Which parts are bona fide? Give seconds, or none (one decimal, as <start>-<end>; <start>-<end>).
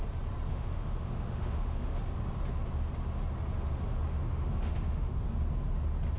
0.0-0.5; 2.0-4.1; 5.2-6.2